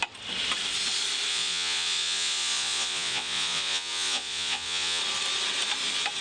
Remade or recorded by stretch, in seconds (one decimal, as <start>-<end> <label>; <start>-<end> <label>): 0.0-1.3 recorded; 1.3-5.0 remade; 5.0-6.2 recorded